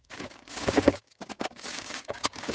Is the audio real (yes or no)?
no